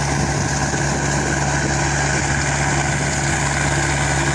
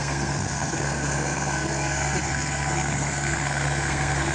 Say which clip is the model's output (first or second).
second